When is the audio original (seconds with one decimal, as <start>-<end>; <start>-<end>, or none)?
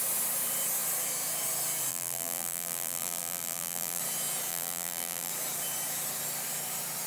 0.0-1.9; 4.0-4.5; 5.3-7.1